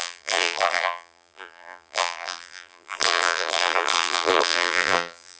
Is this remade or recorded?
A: remade